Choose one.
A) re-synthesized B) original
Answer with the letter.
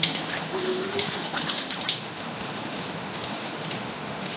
A